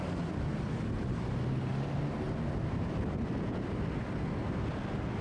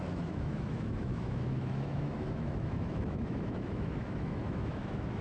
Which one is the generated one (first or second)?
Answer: second